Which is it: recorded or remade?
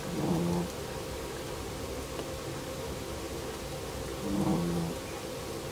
recorded